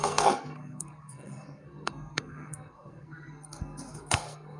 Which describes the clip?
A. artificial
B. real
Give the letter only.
A